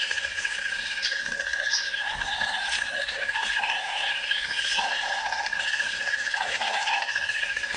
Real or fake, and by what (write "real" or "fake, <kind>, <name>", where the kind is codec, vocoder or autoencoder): fake, codec, SNAC